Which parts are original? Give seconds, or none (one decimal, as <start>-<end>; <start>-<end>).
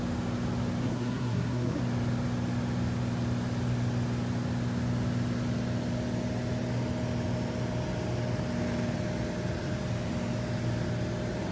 0.0-0.8; 1.8-11.5